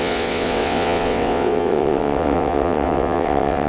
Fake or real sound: fake